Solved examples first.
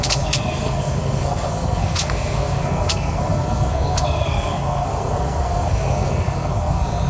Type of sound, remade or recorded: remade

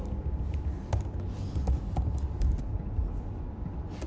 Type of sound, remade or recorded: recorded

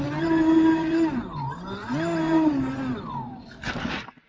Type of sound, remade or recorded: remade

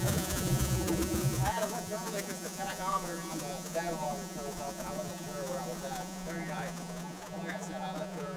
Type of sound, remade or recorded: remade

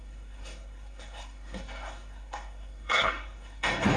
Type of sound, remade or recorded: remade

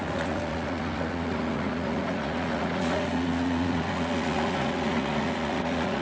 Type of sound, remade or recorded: remade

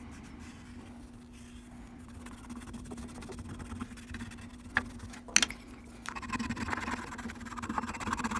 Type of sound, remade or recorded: recorded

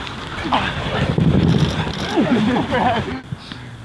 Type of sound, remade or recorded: recorded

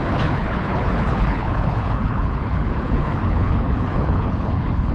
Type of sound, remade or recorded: remade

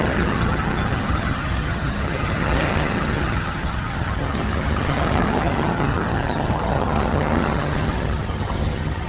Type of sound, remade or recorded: remade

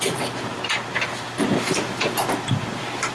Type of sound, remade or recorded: recorded